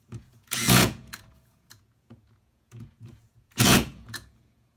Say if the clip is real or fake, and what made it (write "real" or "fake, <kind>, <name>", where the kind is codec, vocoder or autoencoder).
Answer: fake, vocoder, Vocos